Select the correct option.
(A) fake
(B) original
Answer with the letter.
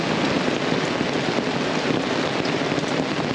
B